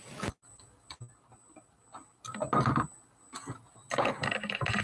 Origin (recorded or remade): recorded